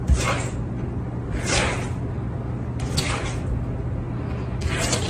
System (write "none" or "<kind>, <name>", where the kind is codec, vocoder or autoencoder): none